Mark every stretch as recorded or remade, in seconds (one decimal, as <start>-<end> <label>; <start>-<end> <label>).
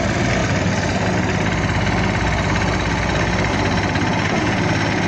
0.0-4.1 recorded; 4.1-4.6 remade; 4.6-5.1 recorded